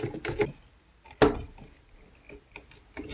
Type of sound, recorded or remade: recorded